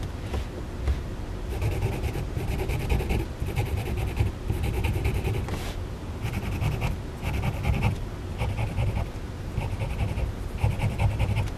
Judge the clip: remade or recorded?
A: recorded